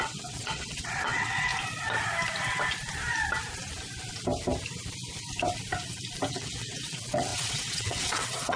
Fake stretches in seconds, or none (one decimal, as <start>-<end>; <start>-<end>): 0.0-1.5; 6.3-8.6